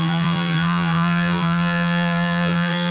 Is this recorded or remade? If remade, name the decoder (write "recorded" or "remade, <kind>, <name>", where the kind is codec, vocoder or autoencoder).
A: remade, vocoder, BigVGAN v2